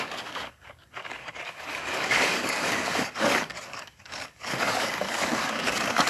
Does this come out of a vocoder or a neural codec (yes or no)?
yes